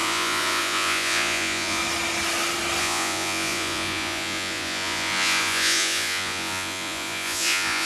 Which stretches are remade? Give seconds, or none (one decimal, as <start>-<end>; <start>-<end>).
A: 0.0-1.8; 2.8-7.9